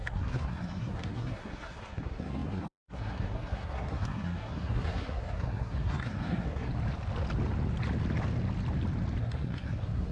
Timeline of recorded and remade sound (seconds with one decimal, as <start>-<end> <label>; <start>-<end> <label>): 0.0-6.7 remade; 6.7-9.2 recorded; 9.2-10.1 remade